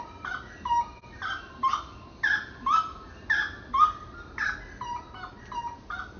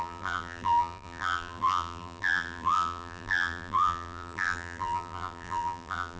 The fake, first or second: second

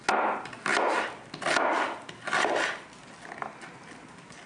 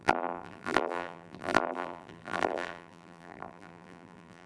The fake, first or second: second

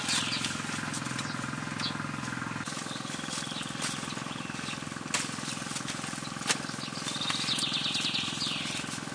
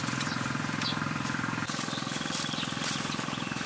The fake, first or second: second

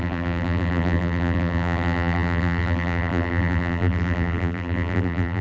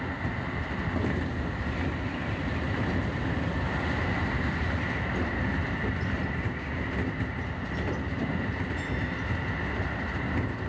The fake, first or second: first